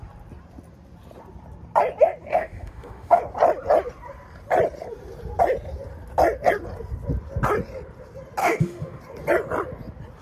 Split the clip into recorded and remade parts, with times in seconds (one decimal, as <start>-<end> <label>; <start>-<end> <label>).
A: 0.0-2.3 recorded; 2.3-3.2 remade; 3.2-8.4 recorded; 8.4-9.0 remade; 9.0-10.2 recorded